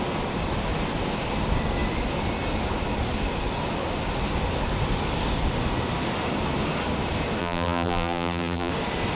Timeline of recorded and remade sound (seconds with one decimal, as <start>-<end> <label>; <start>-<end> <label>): 0.0-7.4 recorded; 7.4-8.7 remade; 8.7-9.2 recorded